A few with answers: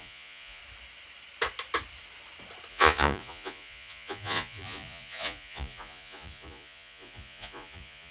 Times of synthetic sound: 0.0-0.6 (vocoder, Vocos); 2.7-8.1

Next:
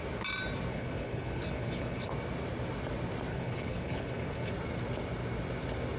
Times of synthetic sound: 0.7-2.1 (codec, HILCodec); 3.3-4.5